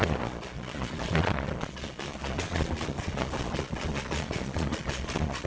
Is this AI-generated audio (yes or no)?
yes